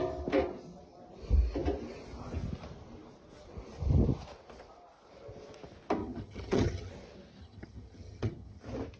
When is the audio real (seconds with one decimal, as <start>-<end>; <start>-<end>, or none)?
0.0-6.0; 6.9-7.4; 8.6-9.0